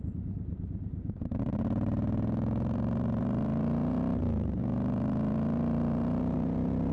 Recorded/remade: remade